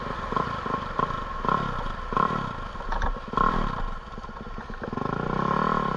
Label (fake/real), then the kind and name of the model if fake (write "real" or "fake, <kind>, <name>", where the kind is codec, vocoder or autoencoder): real